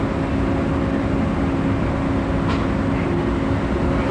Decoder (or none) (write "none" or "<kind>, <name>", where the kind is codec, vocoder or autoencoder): none